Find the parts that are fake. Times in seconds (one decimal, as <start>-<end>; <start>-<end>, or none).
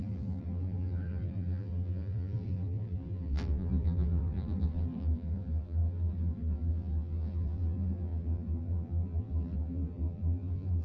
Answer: 0.0-10.8